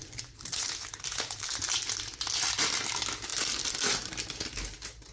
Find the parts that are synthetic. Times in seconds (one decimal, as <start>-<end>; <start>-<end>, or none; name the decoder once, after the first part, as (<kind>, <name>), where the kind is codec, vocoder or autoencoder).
none